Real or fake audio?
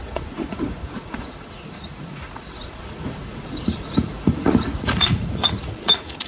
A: fake